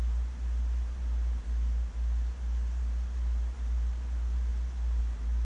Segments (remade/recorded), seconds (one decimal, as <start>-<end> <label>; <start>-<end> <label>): 0.0-5.4 recorded